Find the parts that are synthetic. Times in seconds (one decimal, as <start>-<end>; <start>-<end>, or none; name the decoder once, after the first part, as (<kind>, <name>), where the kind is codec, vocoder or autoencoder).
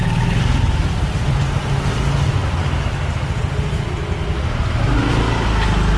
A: none